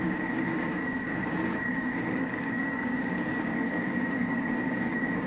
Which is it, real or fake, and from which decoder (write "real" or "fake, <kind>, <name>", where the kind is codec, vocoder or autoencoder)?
fake, codec, DAC